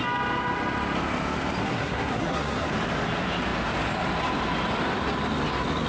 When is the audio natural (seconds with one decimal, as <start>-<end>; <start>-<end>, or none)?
0.0-1.6; 2.7-5.9